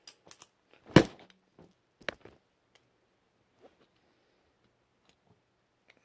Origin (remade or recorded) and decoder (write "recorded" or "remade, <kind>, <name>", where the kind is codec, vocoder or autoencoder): recorded